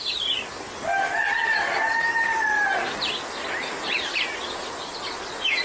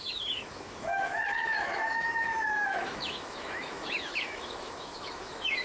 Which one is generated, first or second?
second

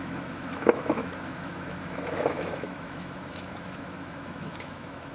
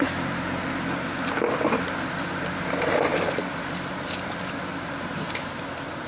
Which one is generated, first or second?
first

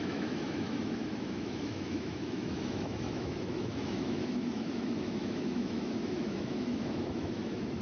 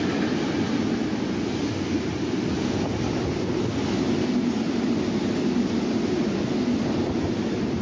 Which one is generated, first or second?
first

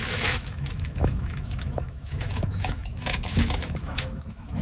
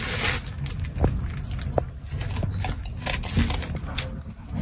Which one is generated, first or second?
first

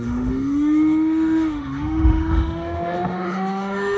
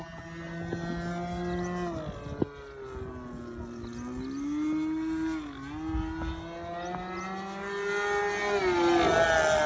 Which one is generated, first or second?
first